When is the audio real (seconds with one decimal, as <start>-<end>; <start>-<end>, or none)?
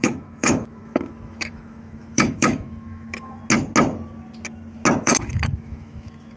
3.4-5.0